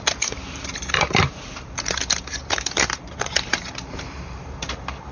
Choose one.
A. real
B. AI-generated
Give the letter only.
B